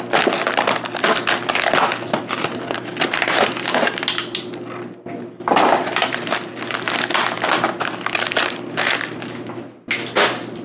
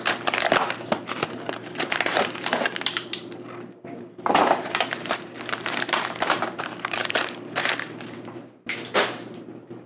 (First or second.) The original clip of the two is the first